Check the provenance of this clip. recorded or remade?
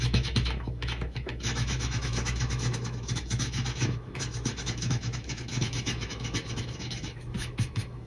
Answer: remade